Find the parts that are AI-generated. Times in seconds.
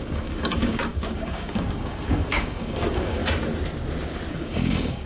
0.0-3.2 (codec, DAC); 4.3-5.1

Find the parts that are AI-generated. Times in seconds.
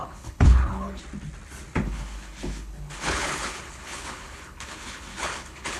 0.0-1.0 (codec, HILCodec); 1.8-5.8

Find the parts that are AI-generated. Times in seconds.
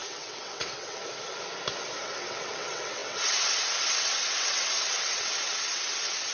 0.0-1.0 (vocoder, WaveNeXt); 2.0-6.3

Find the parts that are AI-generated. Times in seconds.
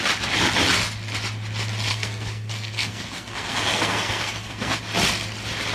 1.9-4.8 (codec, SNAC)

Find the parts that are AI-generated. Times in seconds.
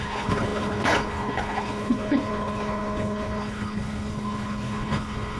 0.0-5.4 (codec, HILCodec)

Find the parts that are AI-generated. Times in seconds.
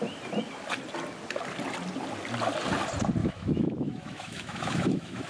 3.2-5.3 (autoencoder, DAC-VAE)